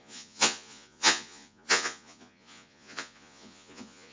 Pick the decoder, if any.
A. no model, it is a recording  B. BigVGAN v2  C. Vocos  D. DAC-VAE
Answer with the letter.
C